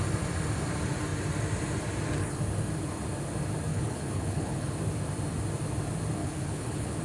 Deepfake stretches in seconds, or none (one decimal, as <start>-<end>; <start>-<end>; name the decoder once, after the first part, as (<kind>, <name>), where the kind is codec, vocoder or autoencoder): 3.7-4.7 (codec, HILCodec); 6.2-7.0